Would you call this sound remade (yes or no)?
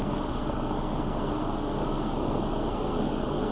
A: yes